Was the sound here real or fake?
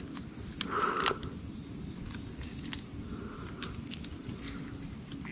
real